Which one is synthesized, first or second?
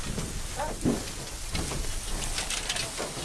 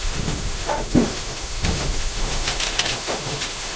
second